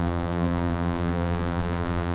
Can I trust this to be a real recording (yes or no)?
no